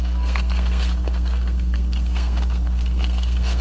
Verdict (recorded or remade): remade